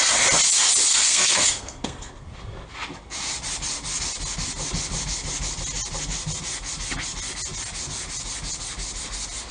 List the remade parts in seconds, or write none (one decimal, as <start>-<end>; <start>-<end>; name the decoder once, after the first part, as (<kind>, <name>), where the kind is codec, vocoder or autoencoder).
0.9-2.3 (codec, SNAC)